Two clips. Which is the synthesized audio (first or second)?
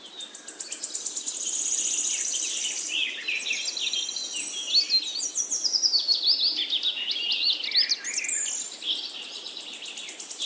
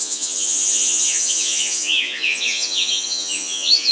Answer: second